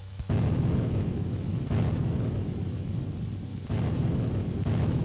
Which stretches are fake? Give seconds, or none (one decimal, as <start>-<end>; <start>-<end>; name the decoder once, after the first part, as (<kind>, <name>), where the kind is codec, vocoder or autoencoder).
0.0-3.0 (autoencoder, DAC-VAE); 3.5-5.0